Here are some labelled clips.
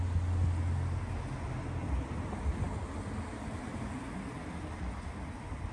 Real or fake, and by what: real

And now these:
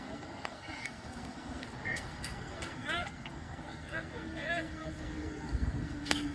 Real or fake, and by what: fake, codec, SNAC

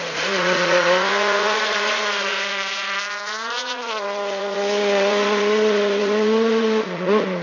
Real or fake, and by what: fake, vocoder, Vocos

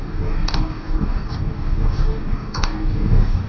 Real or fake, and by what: fake, codec, DAC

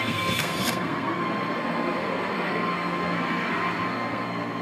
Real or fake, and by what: fake, codec, SNAC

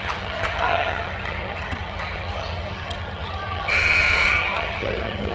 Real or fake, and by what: fake, vocoder, HiFi-GAN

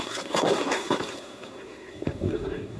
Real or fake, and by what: fake, codec, SNAC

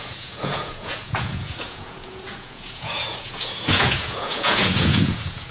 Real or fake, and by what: fake, vocoder, Vocos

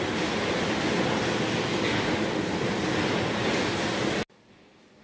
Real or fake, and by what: real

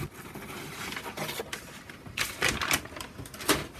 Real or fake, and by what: real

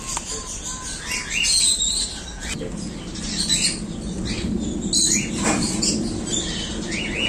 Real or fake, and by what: real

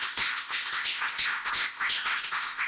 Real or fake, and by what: fake, codec, ZipCodec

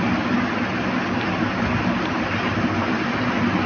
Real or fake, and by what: real